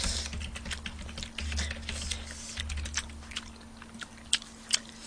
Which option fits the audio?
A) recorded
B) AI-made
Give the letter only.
A